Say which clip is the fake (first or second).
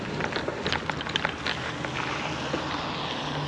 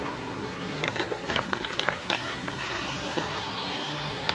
second